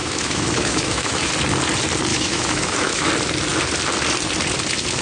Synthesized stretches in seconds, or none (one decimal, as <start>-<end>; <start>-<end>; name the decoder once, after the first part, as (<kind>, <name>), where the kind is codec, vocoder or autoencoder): 0.0-1.3 (autoencoder, DAC-VAE); 2.1-3.1